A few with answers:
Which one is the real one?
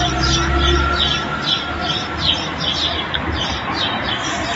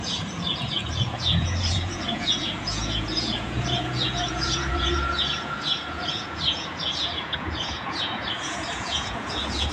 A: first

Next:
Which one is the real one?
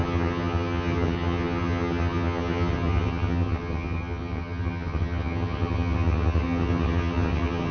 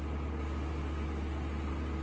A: second